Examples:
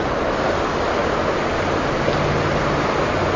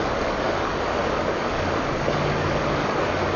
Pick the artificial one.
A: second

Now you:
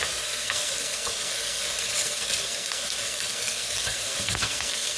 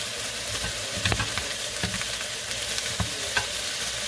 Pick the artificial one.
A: first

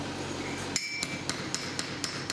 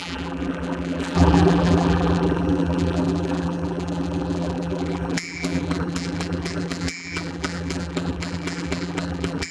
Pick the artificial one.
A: second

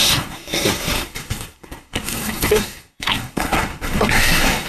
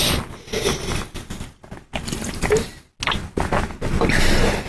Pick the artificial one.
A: first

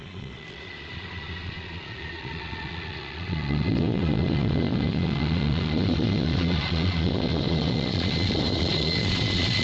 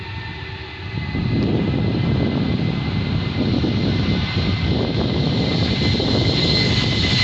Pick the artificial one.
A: first